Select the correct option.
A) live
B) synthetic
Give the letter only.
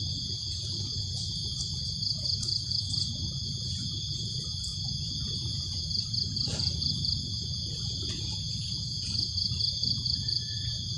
B